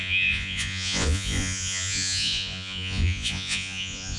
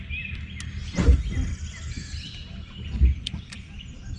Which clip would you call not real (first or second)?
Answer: first